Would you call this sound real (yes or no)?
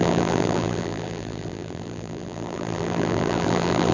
no